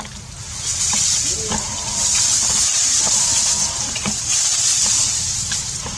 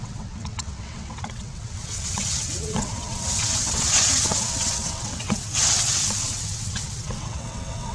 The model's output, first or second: second